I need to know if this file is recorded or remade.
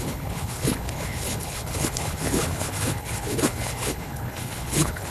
remade